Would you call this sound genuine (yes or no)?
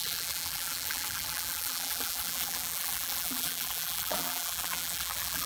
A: no